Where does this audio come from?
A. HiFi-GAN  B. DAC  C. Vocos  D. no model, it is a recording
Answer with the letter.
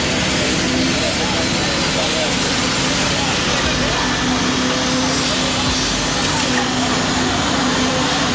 D